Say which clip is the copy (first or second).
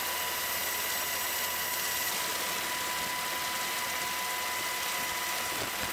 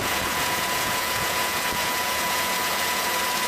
second